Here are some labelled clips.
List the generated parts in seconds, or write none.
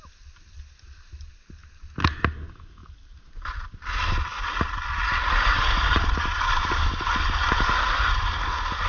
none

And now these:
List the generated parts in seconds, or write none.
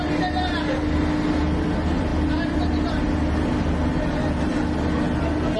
none